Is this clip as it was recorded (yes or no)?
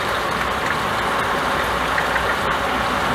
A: yes